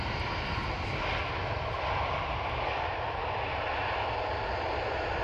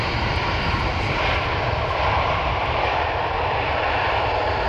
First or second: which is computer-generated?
second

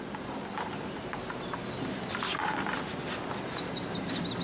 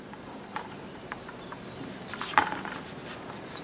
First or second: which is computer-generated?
second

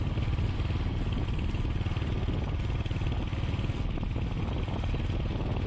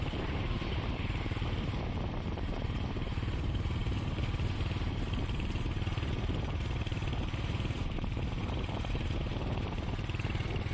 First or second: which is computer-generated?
second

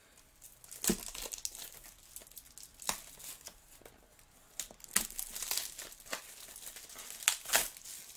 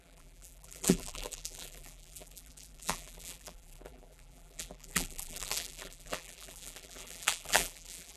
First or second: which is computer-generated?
second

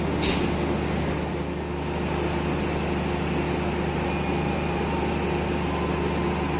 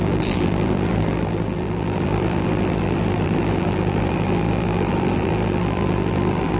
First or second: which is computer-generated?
second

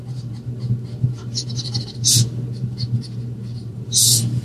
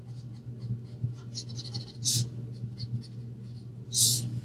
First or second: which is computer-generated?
first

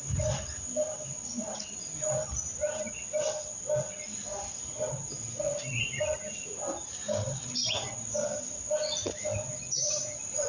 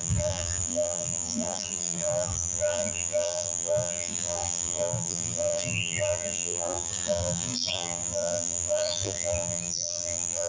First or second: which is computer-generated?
second